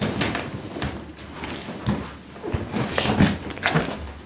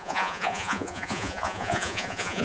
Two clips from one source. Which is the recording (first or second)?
first